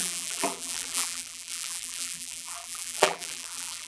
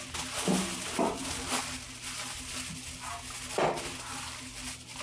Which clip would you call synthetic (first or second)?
first